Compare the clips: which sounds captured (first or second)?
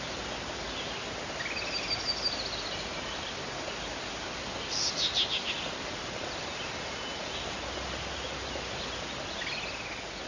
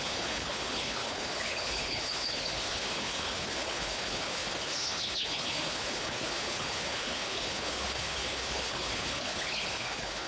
first